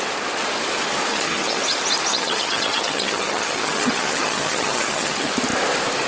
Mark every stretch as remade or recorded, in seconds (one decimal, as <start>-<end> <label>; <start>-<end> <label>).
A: 0.0-1.1 recorded; 1.1-1.6 remade; 1.6-2.1 recorded; 2.1-5.3 remade; 5.3-6.1 recorded